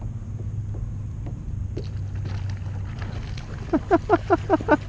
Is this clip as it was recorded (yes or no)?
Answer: yes